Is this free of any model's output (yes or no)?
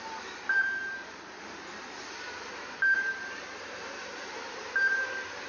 yes